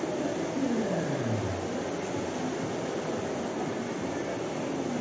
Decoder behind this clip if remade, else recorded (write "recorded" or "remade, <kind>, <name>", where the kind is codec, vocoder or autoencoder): recorded